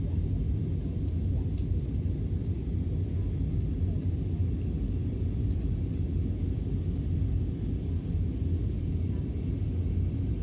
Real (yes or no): yes